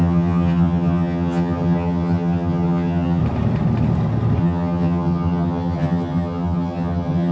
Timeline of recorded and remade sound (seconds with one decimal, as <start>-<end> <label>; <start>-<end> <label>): 0.0-3.2 remade; 3.2-4.4 recorded; 4.4-7.3 remade